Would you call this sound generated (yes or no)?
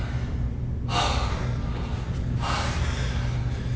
no